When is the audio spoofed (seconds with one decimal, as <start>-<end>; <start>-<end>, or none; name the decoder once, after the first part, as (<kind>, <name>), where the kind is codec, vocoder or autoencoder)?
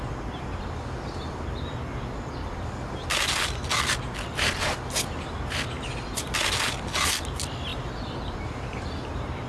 none